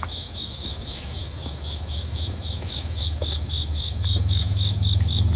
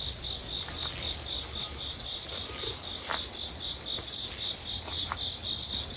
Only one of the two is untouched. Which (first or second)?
second